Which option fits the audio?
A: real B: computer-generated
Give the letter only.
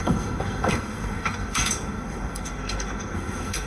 B